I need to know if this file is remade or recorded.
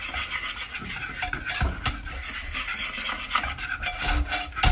recorded